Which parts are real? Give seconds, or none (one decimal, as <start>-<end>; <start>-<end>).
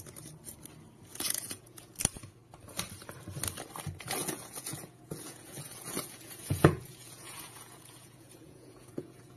0.0-1.1; 2.0-4.2